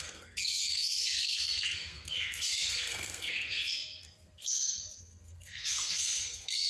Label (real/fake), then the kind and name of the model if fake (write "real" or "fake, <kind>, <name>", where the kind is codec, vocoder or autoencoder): fake, codec, SNAC